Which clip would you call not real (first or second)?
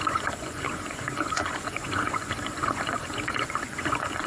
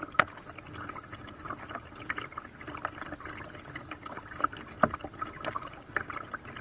first